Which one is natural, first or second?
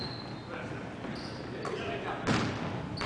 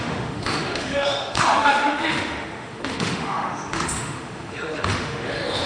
first